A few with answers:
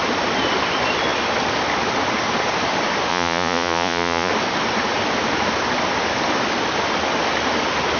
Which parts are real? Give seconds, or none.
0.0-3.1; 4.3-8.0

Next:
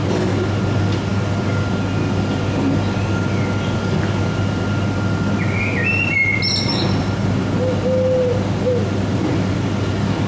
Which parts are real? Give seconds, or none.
0.0-10.3

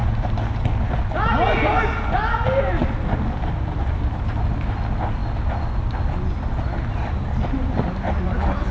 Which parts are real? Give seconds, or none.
0.0-2.8; 4.0-8.7

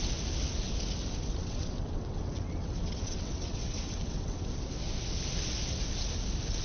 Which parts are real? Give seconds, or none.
0.0-1.4; 4.5-6.6